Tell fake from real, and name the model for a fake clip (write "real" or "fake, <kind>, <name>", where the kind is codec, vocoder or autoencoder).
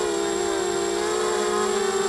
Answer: real